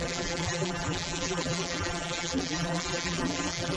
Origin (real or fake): fake